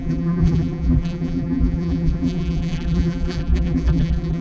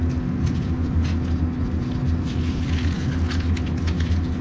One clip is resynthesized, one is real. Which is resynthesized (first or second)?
first